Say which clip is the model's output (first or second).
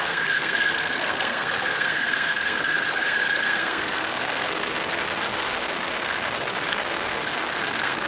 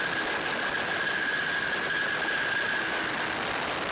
first